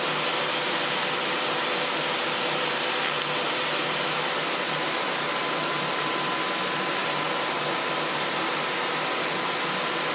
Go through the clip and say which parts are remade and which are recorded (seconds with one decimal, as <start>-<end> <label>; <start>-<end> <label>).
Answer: 0.0-10.1 recorded